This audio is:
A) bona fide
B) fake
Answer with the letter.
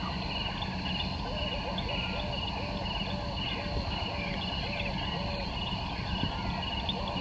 A